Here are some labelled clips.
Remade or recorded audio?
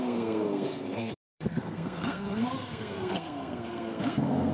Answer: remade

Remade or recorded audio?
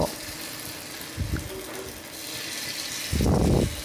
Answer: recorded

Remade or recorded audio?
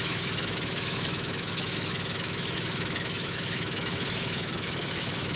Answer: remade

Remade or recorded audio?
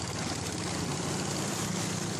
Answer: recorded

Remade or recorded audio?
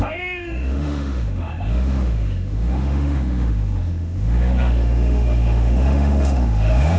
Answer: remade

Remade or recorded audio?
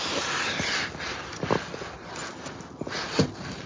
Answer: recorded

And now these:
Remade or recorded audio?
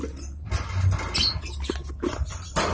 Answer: recorded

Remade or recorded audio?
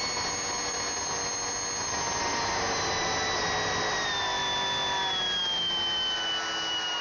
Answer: recorded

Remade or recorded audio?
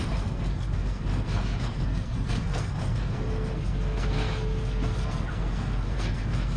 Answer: remade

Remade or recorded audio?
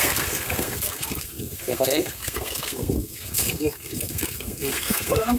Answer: remade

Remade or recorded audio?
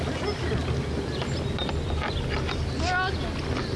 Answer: recorded